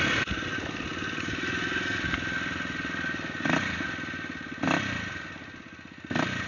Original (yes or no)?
yes